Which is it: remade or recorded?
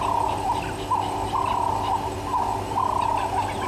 recorded